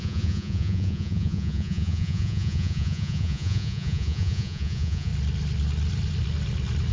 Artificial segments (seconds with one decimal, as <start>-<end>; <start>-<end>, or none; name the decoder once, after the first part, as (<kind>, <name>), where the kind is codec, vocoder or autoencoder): 0.0-5.1 (vocoder, Vocos)